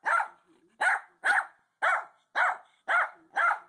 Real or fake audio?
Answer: real